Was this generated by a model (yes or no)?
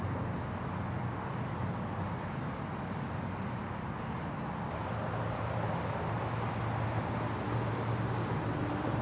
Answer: no